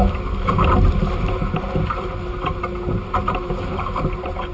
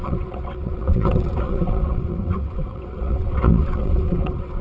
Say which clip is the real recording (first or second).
first